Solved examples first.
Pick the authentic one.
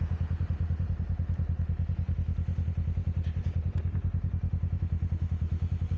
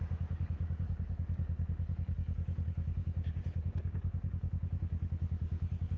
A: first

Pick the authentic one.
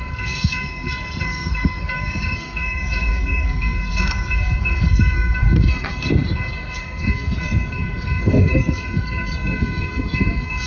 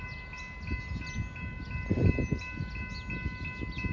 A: second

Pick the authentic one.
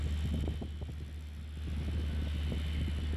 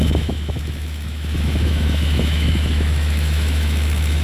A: first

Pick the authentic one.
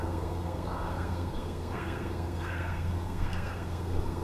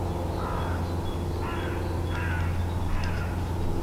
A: second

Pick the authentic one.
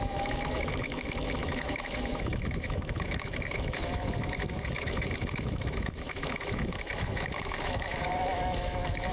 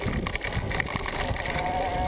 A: second